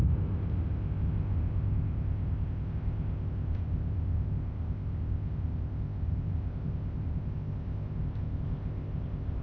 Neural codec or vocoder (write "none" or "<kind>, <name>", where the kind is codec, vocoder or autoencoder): codec, ZipCodec